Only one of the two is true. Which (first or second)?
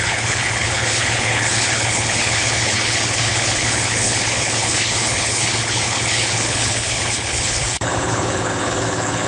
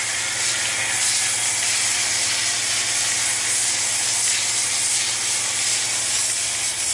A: second